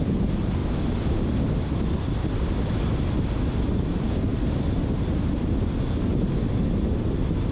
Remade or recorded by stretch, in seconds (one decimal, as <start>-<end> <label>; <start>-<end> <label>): 0.0-0.6 remade; 0.6-3.6 recorded; 3.6-4.3 remade; 4.3-7.1 recorded; 7.1-7.5 remade